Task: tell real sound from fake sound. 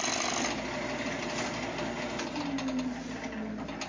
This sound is real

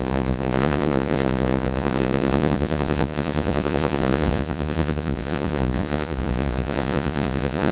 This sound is fake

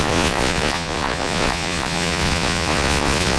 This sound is fake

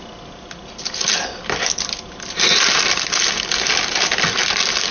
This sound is real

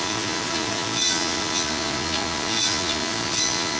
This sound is fake